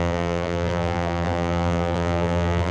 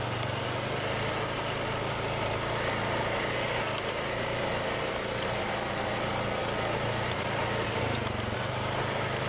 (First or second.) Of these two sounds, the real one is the second